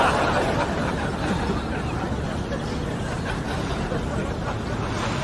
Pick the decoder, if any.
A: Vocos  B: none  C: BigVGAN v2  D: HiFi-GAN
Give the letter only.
B